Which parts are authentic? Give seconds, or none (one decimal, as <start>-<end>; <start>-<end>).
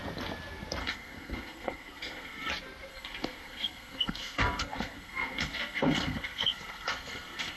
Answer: 0.0-0.8; 2.5-2.9